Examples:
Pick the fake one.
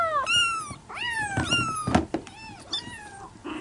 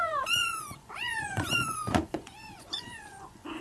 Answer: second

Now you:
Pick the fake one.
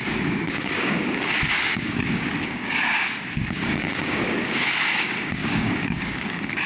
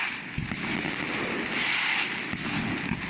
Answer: first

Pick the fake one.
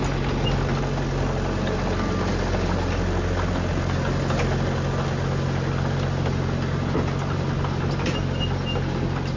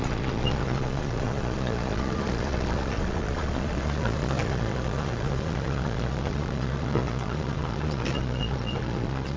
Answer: second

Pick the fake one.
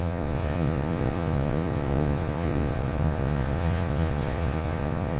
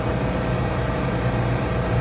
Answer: first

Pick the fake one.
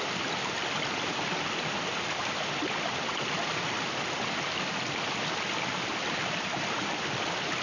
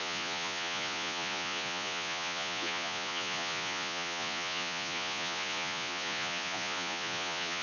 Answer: second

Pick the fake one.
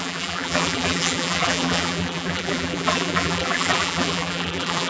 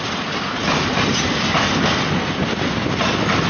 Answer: first